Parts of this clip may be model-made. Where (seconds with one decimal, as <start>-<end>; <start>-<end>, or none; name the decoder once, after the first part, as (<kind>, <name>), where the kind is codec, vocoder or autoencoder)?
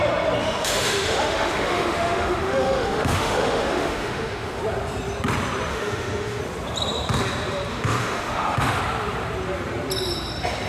0.4-4.6 (autoencoder, DAC-VAE); 5.7-6.4; 7.7-8.8